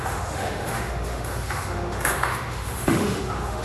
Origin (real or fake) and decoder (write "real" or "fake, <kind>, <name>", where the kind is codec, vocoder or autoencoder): fake, autoencoder, DAC-VAE